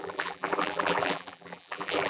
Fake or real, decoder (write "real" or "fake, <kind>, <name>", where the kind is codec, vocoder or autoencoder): fake, vocoder, BigVGAN v2